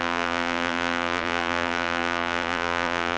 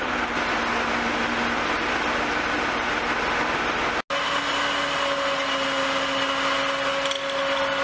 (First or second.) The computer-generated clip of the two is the first